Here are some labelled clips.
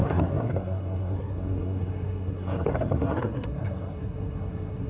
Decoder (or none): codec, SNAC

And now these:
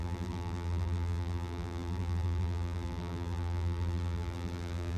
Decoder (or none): vocoder, BigVGAN v2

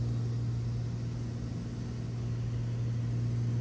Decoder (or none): none